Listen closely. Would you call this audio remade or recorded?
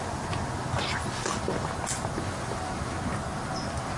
recorded